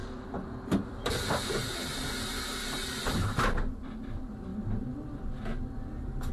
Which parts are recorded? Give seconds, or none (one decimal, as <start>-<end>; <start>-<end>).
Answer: 4.5-6.3